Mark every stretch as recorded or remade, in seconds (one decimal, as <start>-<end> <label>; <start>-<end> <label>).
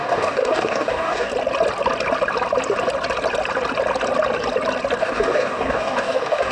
0.0-1.3 remade; 1.3-5.0 recorded; 5.0-6.5 remade